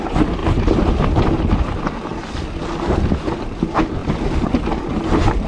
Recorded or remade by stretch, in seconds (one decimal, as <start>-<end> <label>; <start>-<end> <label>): 0.0-5.5 recorded